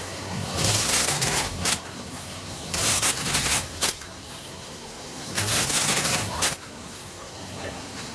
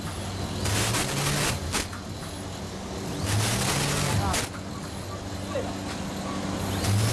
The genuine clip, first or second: second